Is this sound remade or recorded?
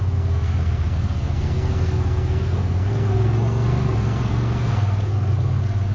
remade